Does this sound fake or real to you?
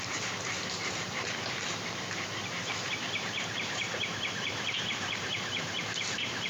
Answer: fake